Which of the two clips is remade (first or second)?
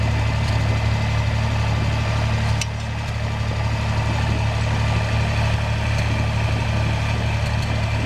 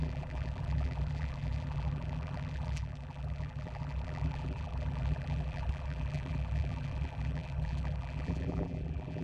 second